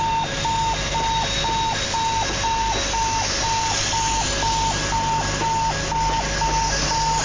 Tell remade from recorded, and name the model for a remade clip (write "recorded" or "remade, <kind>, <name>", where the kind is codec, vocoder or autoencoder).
recorded